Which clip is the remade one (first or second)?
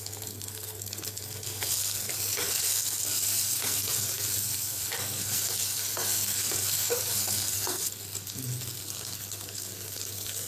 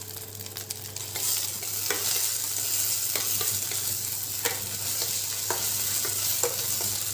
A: first